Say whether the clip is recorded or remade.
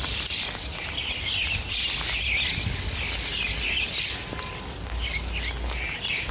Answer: recorded